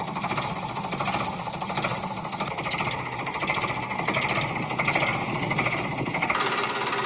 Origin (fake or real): real